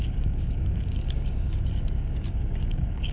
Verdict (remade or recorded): remade